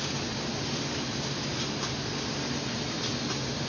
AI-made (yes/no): no